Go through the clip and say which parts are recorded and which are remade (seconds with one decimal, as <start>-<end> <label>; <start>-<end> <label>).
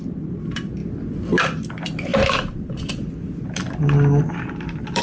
0.0-0.8 remade; 0.8-1.4 recorded; 1.4-3.8 remade; 3.8-4.3 recorded; 4.3-5.0 remade